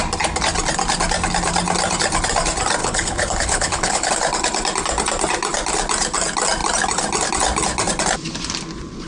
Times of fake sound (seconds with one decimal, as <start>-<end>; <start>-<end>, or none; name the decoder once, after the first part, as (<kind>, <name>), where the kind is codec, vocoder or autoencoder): 2.8-4.1 (codec, HILCodec)